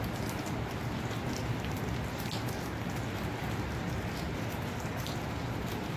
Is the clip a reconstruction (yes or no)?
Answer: no